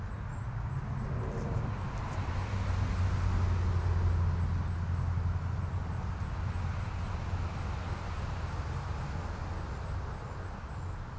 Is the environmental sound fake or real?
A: real